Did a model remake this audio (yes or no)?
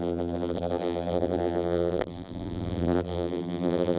yes